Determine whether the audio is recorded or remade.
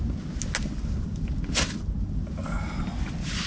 recorded